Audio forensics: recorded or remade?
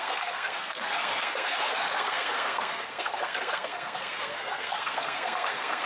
remade